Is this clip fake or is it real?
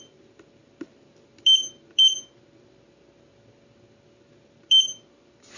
real